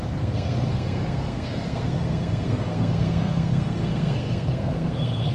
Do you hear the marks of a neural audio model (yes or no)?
yes